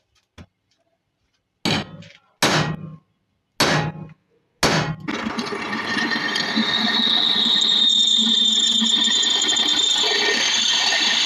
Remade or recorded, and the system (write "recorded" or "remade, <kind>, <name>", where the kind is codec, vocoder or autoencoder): recorded